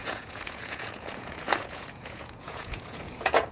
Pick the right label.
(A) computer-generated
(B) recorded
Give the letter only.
A